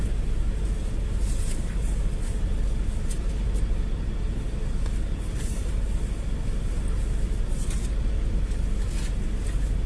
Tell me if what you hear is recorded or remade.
recorded